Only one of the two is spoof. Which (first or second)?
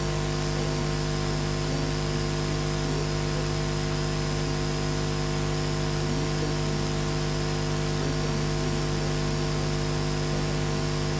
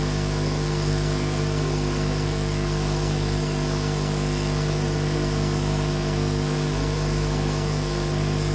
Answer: second